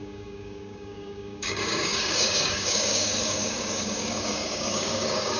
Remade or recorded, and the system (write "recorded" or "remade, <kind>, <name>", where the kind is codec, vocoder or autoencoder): remade, codec, DAC